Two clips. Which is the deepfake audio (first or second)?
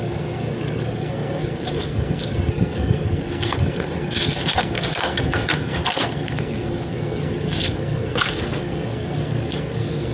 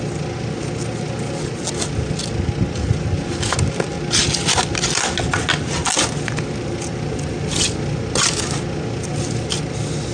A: first